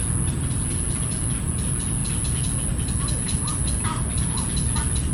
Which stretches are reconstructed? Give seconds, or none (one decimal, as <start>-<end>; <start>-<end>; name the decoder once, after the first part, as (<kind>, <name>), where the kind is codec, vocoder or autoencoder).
none